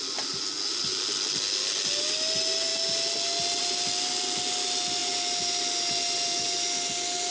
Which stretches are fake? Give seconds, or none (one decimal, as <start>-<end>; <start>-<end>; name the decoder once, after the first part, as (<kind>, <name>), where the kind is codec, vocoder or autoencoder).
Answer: none